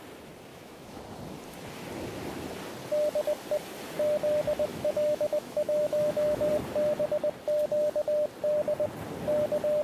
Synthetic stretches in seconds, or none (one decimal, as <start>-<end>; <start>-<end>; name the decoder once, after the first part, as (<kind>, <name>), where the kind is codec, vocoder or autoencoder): 0.5-1.0 (autoencoder, DAC-VAE); 4.7-6.5